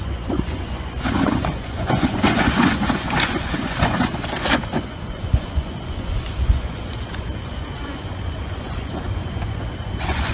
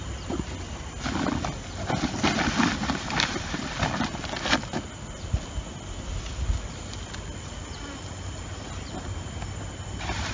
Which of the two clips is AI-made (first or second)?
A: first